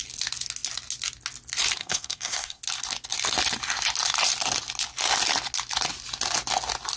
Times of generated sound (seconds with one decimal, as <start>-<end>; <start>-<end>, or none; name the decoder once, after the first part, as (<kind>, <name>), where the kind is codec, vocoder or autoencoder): 1.8-2.6 (codec, SNAC)